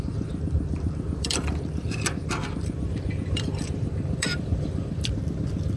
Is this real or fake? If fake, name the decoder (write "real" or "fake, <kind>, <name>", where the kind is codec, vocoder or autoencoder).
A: fake, vocoder, BigVGAN v2